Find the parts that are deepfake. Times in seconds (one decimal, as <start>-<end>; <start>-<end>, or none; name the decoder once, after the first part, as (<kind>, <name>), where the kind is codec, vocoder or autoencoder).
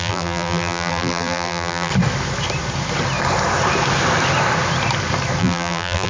0.0-1.9 (vocoder, BigVGAN v2); 5.4-6.1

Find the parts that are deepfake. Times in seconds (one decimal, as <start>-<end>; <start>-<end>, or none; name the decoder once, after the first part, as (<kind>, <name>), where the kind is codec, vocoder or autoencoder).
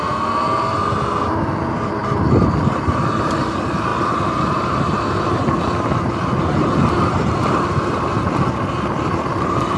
none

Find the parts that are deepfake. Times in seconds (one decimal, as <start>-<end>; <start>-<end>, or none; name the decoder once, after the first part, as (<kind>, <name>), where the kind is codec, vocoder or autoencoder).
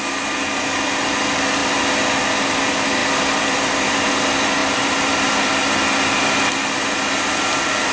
3.0-4.1 (vocoder, BigVGAN v2); 4.6-5.5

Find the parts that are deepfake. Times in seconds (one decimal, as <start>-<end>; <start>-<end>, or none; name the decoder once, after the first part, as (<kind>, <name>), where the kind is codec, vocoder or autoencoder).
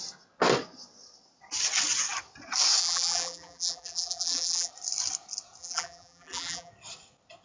2.8-4.7 (vocoder, BigVGAN v2); 5.6-6.7